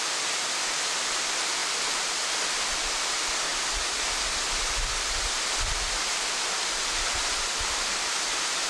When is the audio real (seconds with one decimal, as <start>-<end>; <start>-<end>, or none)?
0.0-8.7